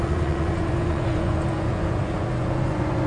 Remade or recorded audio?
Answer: remade